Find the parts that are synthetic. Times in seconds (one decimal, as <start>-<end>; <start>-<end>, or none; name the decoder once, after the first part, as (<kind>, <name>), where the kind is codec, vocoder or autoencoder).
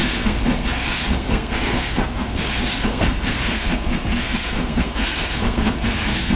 0.0-6.4 (codec, SNAC)